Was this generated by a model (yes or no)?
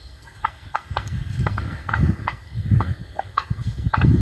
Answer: yes